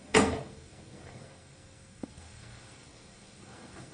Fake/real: fake